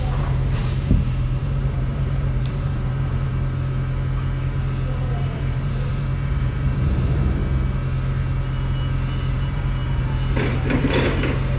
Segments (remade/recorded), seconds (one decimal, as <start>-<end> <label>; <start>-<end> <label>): 0.0-3.3 remade; 3.3-5.1 recorded; 5.1-7.4 remade; 7.4-9.3 recorded; 9.3-11.6 remade